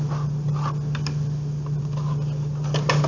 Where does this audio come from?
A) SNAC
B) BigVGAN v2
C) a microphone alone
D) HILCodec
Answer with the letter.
C